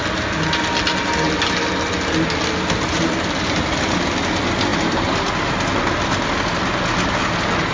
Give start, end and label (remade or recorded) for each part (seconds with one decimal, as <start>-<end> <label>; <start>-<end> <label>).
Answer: 0.0-7.7 recorded